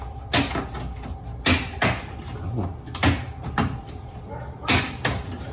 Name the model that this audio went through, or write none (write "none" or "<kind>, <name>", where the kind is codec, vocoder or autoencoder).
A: none